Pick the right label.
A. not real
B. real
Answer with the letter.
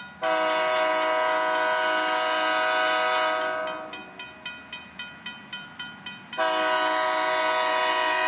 B